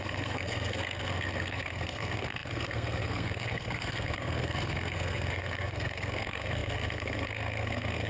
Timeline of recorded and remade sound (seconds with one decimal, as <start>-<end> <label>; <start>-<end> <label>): 0.0-8.1 remade